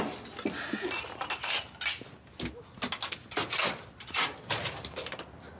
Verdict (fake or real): real